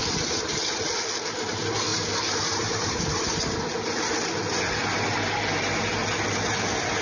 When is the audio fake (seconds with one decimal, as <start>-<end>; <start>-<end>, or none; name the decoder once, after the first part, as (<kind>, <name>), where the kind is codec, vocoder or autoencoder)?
0.0-0.8 (vocoder, BigVGAN v2); 1.9-3.6